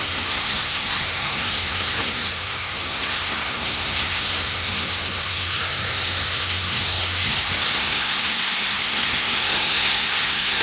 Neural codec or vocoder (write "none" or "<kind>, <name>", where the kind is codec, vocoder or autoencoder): codec, SNAC